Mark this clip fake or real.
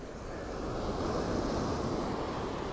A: real